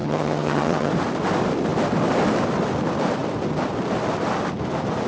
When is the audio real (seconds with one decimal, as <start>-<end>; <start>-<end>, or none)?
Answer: 0.9-5.1